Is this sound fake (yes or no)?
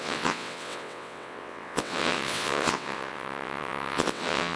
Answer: yes